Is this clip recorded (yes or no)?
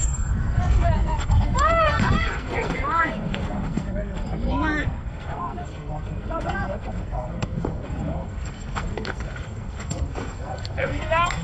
no